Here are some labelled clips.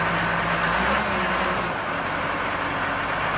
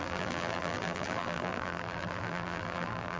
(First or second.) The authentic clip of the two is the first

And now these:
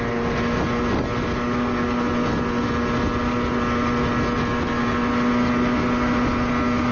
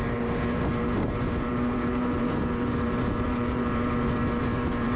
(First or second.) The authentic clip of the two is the first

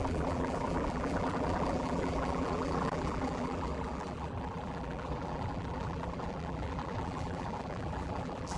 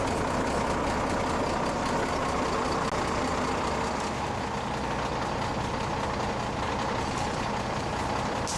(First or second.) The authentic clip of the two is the second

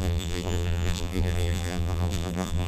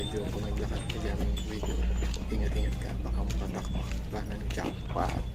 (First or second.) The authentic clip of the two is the second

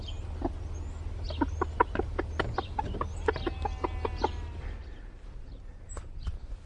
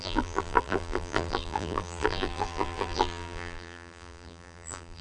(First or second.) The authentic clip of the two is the first